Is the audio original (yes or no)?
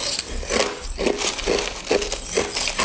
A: yes